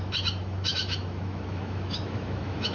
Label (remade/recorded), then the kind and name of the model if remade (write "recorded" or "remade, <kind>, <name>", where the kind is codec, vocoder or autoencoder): remade, autoencoder, DAC-VAE